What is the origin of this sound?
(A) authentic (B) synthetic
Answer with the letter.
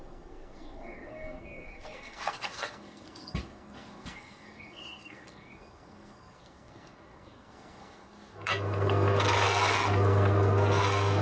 B